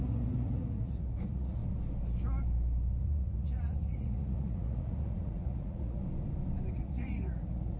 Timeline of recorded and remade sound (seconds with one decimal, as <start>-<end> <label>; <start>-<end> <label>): 0.0-1.6 remade; 1.6-3.0 recorded; 3.0-6.0 remade; 6.0-6.7 recorded; 6.7-7.8 remade